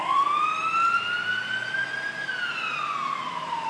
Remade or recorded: recorded